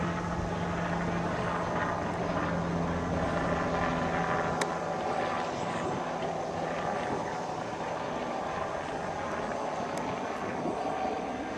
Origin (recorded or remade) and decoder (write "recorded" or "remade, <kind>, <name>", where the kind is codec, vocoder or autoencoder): recorded